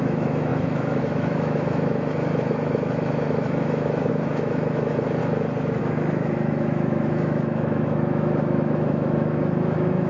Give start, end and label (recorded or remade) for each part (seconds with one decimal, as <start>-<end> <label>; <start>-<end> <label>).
0.0-5.2 remade; 5.2-5.8 recorded; 5.8-10.1 remade